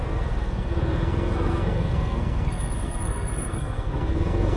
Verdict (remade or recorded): remade